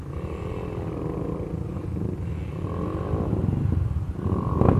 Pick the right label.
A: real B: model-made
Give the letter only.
A